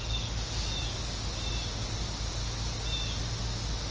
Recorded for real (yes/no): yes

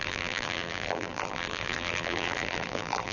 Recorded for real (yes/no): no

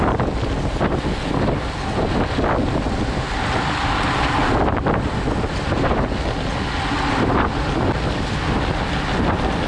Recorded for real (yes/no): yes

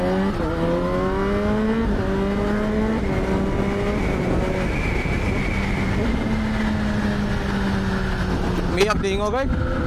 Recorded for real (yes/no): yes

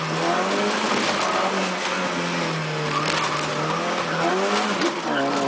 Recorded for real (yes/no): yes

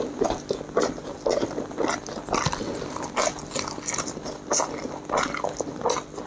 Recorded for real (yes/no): yes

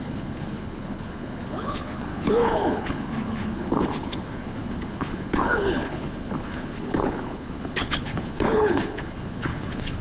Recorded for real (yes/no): no